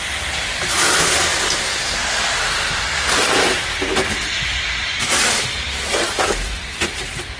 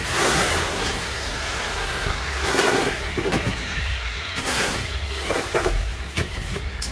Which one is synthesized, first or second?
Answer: second